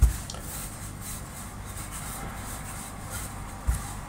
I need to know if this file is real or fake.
real